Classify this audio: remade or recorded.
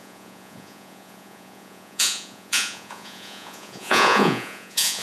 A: remade